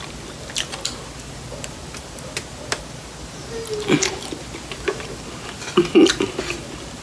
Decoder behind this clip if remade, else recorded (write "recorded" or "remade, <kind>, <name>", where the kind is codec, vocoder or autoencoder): recorded